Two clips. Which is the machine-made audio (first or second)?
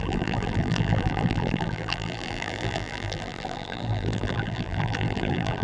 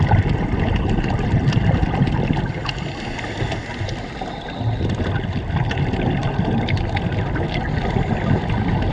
first